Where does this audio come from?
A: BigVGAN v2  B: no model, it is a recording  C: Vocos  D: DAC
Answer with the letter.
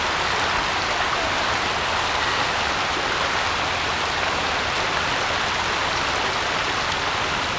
B